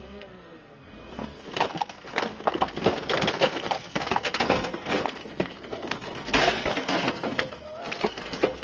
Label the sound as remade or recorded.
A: remade